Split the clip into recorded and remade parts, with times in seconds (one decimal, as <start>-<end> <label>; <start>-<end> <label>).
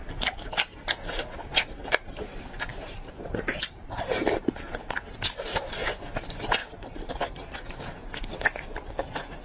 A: 0.0-2.7 recorded; 2.7-4.4 remade; 4.4-6.6 recorded; 6.6-7.2 remade; 7.2-9.4 recorded